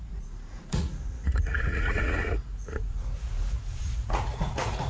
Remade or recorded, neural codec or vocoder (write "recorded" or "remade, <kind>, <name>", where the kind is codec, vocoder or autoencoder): remade, vocoder, Vocos